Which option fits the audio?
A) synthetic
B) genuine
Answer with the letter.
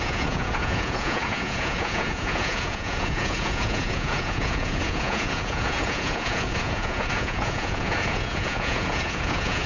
A